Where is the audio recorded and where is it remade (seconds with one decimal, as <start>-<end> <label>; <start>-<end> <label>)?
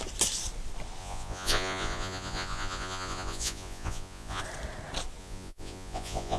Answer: 0.0-1.0 recorded; 1.0-4.4 remade; 4.4-5.2 recorded; 5.2-6.4 remade